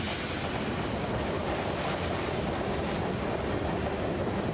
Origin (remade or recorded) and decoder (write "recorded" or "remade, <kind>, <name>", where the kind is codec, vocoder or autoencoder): remade, vocoder, BigVGAN v2